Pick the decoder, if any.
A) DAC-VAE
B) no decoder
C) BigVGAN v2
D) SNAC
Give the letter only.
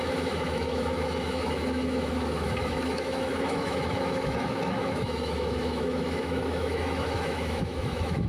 A